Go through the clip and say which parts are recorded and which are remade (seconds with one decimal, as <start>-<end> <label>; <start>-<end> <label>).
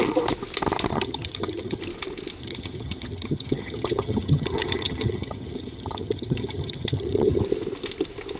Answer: 0.0-0.9 recorded; 0.9-1.8 remade; 1.8-2.4 recorded; 2.4-7.4 remade; 7.4-8.4 recorded